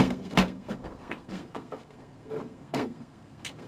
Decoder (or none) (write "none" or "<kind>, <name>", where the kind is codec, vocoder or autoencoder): codec, SNAC